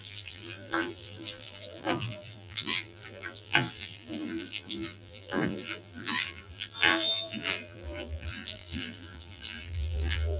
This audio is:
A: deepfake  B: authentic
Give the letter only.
A